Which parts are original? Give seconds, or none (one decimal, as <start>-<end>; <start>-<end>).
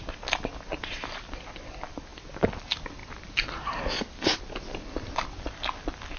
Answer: 0.0-6.2